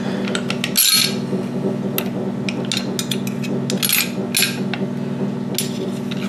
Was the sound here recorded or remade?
recorded